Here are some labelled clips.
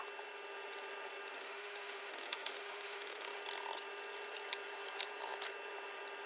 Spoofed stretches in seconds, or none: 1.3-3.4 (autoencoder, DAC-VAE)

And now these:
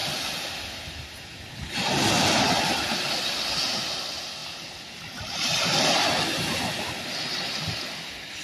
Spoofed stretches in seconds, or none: none